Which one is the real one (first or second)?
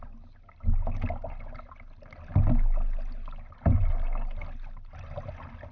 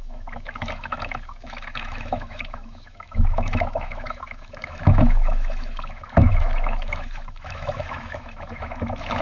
first